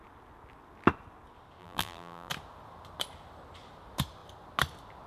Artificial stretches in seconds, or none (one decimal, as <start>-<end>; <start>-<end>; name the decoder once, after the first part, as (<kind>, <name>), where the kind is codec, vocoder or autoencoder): 1.6-2.3 (vocoder, BigVGAN v2)